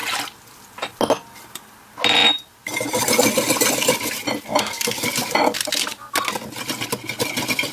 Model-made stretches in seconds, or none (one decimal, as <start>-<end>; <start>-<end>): none